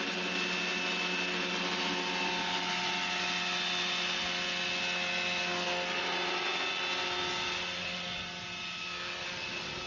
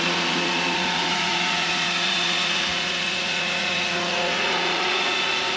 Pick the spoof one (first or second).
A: second